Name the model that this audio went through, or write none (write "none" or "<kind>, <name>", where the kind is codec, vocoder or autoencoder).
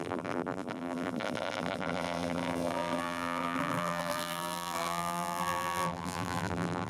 vocoder, BigVGAN v2